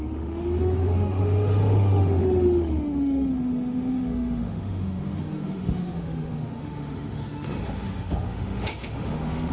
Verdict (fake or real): fake